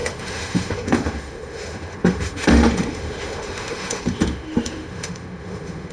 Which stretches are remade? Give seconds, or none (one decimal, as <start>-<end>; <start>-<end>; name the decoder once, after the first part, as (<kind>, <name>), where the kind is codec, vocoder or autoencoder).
0.0-5.9 (autoencoder, DAC-VAE)

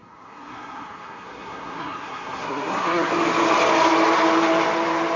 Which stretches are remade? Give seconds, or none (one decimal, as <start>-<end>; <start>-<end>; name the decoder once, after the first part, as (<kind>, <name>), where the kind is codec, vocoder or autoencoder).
0.0-3.1 (codec, SNAC)

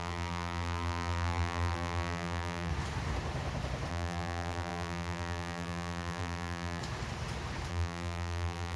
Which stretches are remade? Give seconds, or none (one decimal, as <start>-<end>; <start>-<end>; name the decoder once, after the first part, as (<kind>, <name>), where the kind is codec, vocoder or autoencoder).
0.0-2.7 (vocoder, BigVGAN v2); 3.9-6.8; 7.7-8.8

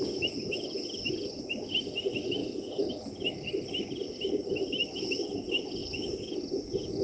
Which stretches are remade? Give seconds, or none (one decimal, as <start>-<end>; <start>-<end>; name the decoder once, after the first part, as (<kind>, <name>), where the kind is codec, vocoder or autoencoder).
0.0-2.4 (vocoder, BigVGAN v2); 4.6-5.8

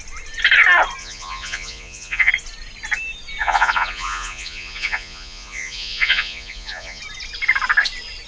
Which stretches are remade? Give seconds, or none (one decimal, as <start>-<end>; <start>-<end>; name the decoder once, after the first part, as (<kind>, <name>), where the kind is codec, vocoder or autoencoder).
1.0-2.3 (vocoder, Vocos); 3.4-7.0

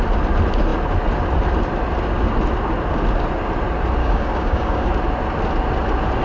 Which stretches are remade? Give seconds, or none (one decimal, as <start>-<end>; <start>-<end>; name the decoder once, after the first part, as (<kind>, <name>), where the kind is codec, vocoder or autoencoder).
4.0-4.9 (codec, DAC)